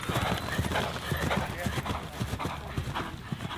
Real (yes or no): yes